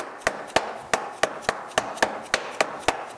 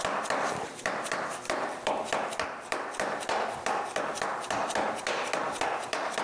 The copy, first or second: second